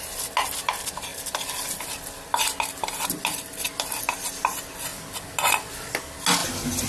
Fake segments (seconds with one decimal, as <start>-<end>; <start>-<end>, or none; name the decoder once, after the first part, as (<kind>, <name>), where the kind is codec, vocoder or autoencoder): none